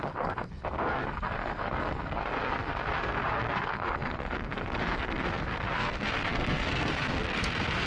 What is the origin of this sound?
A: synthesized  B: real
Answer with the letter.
A